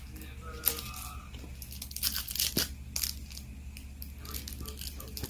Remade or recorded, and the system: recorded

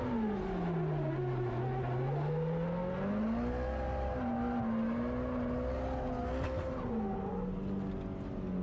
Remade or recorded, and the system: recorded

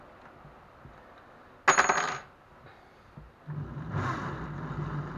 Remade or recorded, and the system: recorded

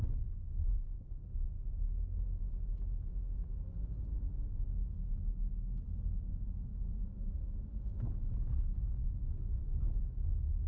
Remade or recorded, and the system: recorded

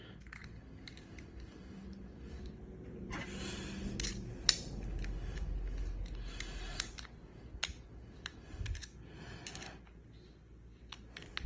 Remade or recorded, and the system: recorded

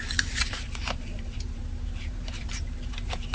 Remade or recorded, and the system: remade, vocoder, BigVGAN v2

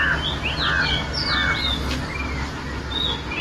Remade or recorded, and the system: recorded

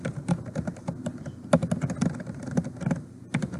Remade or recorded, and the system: recorded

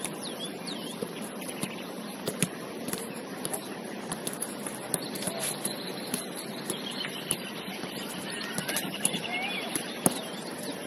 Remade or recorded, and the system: remade, vocoder, BigVGAN v2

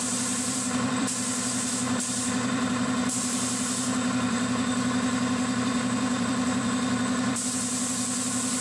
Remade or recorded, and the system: remade, vocoder, BigVGAN v2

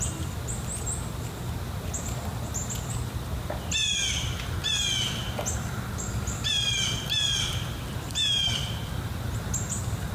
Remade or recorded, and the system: recorded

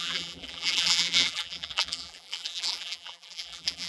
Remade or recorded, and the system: remade, vocoder, BigVGAN v2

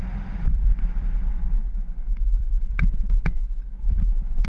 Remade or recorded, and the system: remade, vocoder, BigVGAN v2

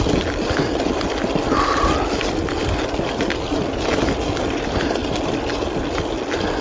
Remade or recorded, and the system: recorded